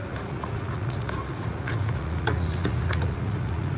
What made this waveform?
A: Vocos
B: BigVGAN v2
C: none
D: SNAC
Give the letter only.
A